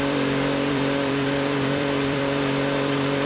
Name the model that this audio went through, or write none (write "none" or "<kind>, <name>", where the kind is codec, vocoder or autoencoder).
vocoder, BigVGAN v2